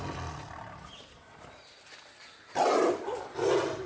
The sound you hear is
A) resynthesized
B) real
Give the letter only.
B